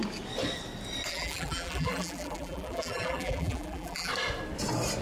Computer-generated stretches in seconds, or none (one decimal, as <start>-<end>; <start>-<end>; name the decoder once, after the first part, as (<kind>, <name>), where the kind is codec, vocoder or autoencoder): 1.1-4.1 (vocoder, BigVGAN v2)